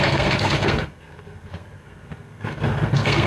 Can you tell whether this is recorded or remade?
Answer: remade